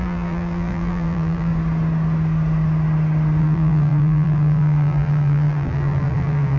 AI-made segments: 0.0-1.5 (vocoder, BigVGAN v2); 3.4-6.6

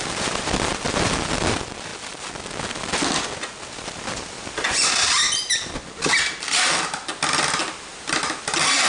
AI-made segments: 0.0-1.9 (vocoder, BigVGAN v2); 3.7-5.8; 8.4-8.9